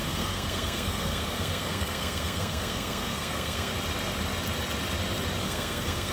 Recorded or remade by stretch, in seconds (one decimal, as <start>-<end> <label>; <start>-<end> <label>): 0.0-3.7 remade; 3.7-5.4 recorded; 5.4-6.1 remade